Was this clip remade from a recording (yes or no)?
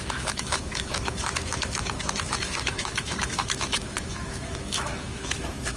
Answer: yes